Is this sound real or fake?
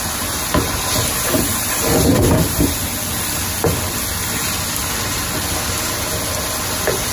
real